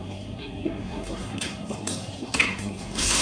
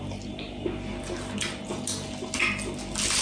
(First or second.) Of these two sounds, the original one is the second